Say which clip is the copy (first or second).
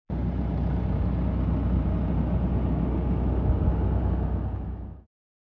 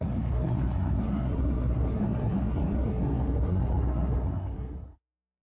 second